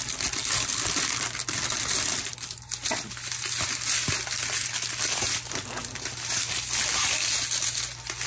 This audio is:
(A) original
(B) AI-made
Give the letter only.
A